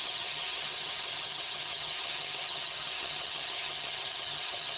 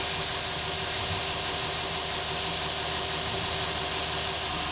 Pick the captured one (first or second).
second